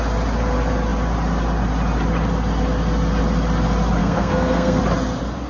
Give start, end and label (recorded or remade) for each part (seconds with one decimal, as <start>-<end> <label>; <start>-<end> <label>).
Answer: 0.0-4.0 recorded; 4.0-4.8 remade; 4.8-5.5 recorded